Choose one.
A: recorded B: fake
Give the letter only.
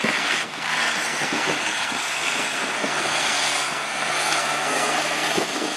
B